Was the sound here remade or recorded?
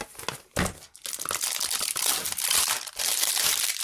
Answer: recorded